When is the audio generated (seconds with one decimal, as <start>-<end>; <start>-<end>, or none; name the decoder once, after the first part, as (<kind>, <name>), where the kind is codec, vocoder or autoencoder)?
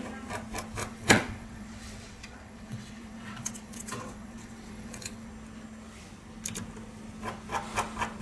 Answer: 0.8-5.3 (vocoder, WaveNeXt)